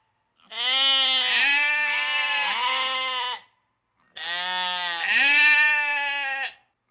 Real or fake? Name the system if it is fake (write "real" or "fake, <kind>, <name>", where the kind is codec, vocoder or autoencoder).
real